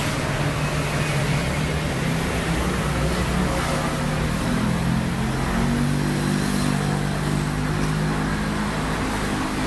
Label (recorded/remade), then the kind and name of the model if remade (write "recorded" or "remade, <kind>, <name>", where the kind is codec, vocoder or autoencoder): recorded